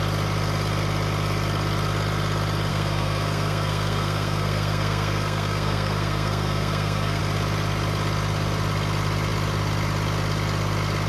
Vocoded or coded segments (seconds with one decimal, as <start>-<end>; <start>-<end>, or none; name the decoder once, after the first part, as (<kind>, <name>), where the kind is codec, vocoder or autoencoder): 2.7-7.2 (codec, SNAC)

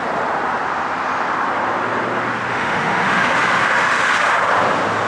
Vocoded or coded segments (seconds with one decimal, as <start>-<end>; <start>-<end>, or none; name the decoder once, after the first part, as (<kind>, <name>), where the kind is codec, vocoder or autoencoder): 2.5-4.1 (autoencoder, DAC-VAE)

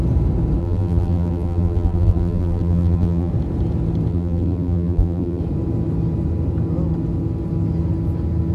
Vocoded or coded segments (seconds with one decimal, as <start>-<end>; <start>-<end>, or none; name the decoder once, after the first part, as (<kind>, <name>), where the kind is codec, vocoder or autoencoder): 0.6-3.3 (vocoder, BigVGAN v2); 4.1-5.4

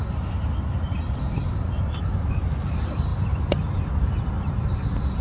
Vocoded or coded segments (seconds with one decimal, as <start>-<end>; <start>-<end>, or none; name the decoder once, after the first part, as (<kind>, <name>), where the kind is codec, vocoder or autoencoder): none